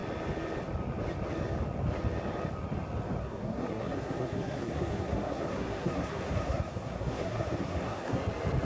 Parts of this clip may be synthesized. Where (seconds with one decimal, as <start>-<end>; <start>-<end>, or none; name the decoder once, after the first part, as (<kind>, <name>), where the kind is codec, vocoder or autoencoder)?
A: 3.2-8.2 (codec, SNAC)